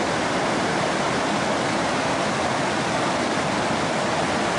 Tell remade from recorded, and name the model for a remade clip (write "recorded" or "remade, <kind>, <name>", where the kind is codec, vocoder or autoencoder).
recorded